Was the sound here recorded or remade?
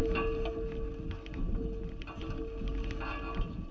recorded